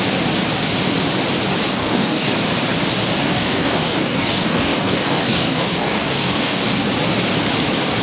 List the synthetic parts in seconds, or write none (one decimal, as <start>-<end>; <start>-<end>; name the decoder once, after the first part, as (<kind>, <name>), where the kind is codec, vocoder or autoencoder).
1.7-2.3 (codec, DAC); 3.2-6.9